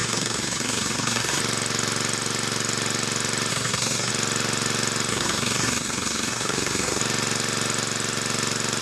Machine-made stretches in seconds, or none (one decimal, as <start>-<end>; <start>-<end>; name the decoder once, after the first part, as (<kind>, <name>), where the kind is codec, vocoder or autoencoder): 0.0-1.4 (codec, SNAC); 3.5-4.1; 5.1-7.0